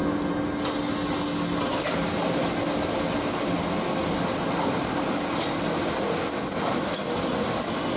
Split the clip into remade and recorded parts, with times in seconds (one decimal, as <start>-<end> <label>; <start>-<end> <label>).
0.0-8.0 recorded